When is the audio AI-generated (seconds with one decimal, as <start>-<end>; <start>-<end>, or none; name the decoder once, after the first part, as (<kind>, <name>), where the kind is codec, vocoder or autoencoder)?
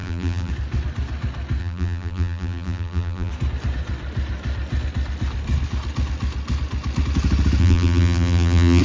0.0-0.5 (vocoder, BigVGAN v2); 1.6-3.3; 7.6-8.8